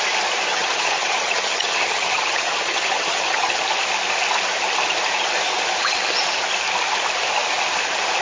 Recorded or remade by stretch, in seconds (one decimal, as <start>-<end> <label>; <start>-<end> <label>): 0.0-0.5 recorded; 0.5-3.6 remade; 3.6-8.2 recorded